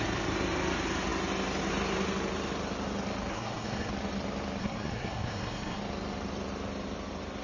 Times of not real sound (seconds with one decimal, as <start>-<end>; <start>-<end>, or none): 3.3-3.9; 4.6-5.8